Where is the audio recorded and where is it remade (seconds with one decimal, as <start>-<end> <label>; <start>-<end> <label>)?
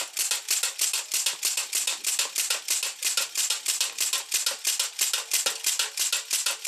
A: 0.0-6.7 recorded